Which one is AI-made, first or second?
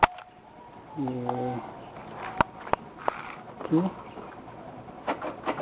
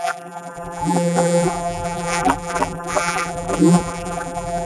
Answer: second